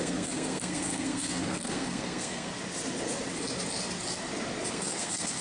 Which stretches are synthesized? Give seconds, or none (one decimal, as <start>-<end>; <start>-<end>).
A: 0.0-2.5; 4.7-5.4